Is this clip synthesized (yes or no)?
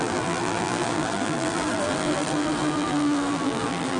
yes